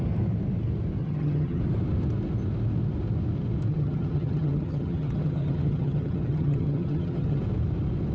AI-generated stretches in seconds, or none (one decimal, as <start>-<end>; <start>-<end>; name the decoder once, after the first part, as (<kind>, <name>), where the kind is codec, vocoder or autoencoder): 1.0-1.6 (vocoder, HiFi-GAN); 3.7-7.4